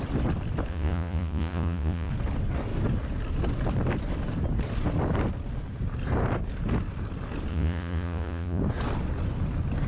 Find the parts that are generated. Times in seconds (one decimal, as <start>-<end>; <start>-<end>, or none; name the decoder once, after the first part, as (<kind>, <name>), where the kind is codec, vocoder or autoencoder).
0.7-2.1 (vocoder, Vocos); 7.5-8.6